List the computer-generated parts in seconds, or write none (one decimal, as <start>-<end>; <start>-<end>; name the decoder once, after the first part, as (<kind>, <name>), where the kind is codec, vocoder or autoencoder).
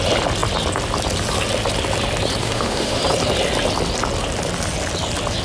2.4-3.0 (autoencoder, DAC-VAE)